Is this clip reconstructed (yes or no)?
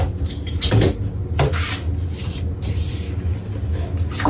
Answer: no